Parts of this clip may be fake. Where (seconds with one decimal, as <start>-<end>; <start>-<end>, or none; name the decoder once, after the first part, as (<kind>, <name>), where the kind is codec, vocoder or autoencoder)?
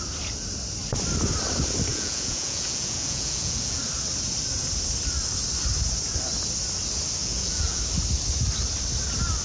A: 1.9-3.8 (vocoder, Vocos); 7.2-7.8